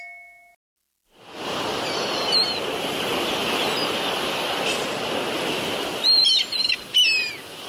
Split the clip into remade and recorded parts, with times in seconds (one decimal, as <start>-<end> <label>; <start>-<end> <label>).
0.0-7.7 recorded